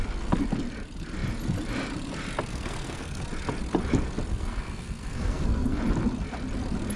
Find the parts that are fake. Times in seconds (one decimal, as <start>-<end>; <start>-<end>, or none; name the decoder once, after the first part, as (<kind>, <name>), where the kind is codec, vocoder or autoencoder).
2.5-3.2 (codec, SNAC); 4.3-5.8